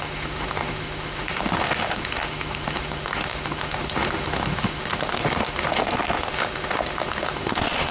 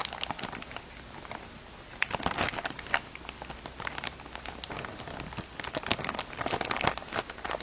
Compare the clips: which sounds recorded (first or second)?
second